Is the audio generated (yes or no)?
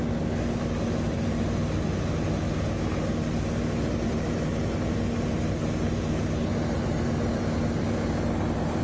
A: no